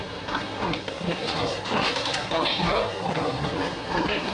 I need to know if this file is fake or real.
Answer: fake